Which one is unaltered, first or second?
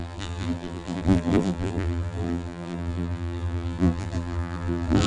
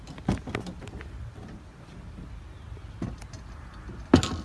second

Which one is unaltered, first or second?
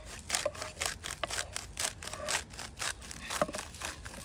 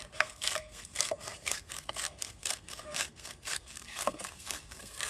first